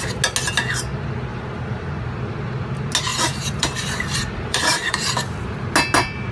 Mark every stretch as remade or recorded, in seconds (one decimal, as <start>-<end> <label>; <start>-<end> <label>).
0.0-1.3 recorded; 1.3-1.9 remade; 1.9-3.1 recorded; 3.1-5.3 remade; 5.3-6.3 recorded